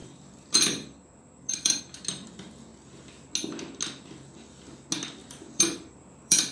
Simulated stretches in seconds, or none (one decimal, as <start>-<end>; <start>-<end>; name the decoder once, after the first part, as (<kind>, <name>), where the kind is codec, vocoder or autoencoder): 0.0-1.8 (vocoder, BigVGAN v2); 5.2-6.5